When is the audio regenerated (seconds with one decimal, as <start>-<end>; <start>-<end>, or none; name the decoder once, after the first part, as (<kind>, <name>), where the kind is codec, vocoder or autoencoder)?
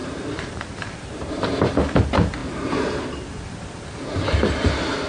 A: 0.0-1.7 (vocoder, BigVGAN v2); 2.4-3.4